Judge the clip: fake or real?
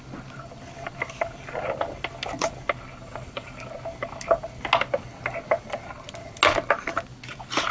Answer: real